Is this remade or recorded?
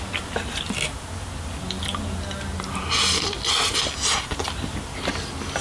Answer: recorded